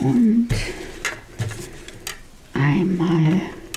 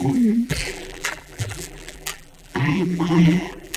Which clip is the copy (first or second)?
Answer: second